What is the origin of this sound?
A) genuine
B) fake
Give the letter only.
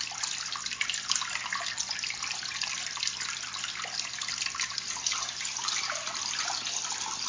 A